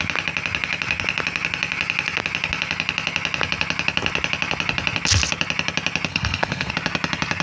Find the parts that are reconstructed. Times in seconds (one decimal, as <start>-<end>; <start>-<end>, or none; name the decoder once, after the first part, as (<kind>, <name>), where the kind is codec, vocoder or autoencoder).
6.1-6.7 (codec, SNAC)